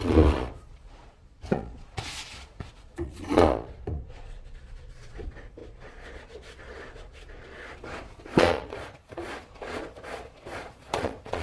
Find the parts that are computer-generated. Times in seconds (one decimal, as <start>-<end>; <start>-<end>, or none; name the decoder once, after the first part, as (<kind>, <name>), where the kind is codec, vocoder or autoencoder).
0.0-11.4 (vocoder, Vocos)